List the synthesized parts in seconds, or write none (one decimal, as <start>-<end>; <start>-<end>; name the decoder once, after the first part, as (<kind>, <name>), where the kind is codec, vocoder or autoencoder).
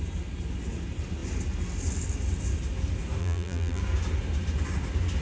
3.2-3.8 (vocoder, BigVGAN v2)